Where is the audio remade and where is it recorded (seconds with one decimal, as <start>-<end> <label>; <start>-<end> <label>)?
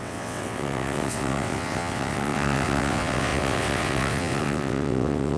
0.0-5.4 remade